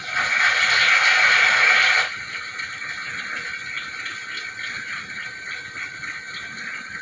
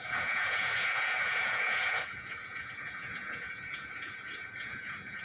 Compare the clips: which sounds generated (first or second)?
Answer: second